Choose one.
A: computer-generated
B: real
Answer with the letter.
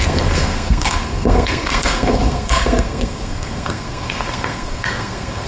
A